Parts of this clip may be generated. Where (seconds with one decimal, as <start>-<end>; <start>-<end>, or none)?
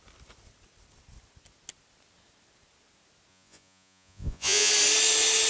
3.3-4.7